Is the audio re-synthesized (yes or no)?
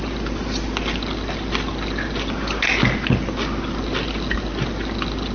no